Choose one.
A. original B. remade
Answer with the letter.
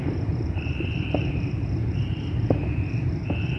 B